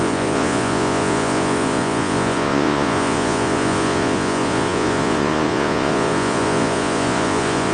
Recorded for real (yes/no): no